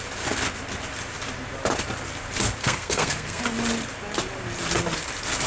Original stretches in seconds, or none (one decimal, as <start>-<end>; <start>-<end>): 0.0-2.6; 3.4-5.5